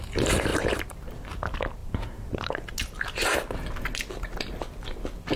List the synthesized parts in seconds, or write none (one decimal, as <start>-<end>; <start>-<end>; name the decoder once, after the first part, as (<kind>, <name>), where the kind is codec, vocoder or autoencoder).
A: 0.5-1.2 (vocoder, BigVGAN v2); 1.8-2.7